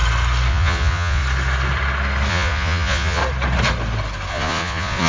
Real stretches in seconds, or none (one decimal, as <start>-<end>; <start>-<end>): 0.0-0.5; 1.2-2.3; 3.2-4.3